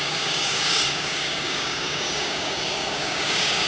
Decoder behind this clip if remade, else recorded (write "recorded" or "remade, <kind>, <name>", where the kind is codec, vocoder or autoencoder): remade, codec, DAC